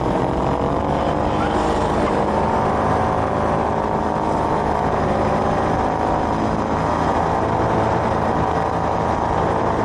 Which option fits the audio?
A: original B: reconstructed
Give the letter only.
B